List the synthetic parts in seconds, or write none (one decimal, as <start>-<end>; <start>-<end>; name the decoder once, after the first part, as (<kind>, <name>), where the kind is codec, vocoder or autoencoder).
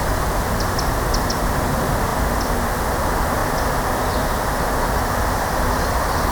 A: 2.1-2.7 (vocoder, BigVGAN v2)